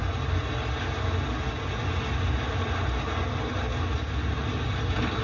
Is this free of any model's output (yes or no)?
yes